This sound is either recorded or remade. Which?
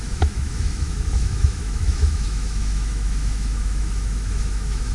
remade